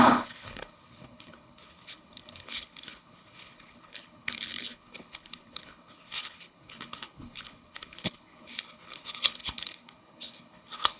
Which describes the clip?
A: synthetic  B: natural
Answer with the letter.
A